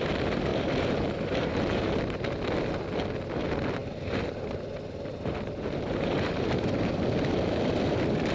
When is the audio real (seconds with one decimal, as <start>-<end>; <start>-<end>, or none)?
0.0-0.5; 2.0-3.8; 7.0-8.3